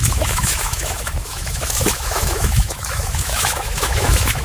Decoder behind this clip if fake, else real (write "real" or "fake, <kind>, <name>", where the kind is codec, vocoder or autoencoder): fake, autoencoder, DAC-VAE